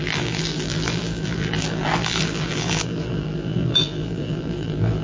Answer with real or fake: fake